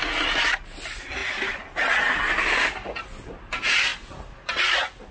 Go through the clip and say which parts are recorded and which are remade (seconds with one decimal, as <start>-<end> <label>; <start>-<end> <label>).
0.0-5.1 recorded